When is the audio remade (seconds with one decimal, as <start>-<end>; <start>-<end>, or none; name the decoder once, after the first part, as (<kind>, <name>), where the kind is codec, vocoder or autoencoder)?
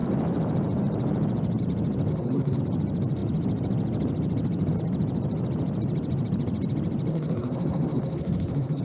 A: 2.1-2.6 (codec, SNAC); 7.1-8.8